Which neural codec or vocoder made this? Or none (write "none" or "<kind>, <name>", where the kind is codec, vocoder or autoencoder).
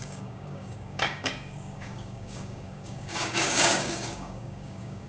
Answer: codec, DAC